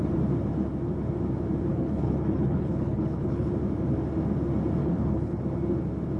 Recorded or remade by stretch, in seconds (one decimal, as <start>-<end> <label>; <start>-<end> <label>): 0.0-1.7 recorded; 1.7-3.5 remade; 3.5-4.8 recorded; 4.8-5.4 remade; 5.4-6.2 recorded